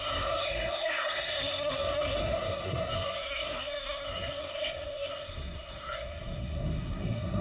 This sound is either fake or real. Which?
fake